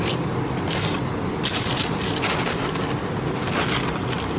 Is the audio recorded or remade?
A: recorded